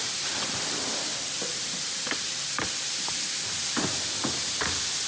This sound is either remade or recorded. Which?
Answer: recorded